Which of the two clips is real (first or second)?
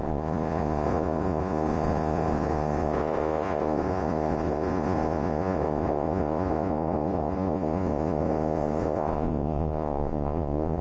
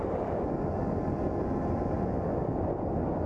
second